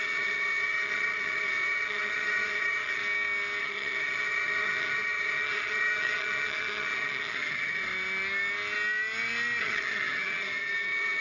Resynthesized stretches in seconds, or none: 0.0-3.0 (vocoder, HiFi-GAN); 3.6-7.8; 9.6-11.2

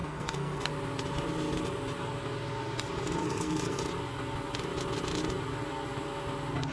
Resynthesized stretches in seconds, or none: 0.0-0.7 (codec, SNAC); 3.2-3.8

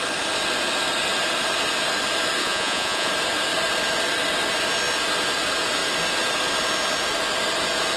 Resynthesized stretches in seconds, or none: 2.4-3.1 (vocoder, Vocos)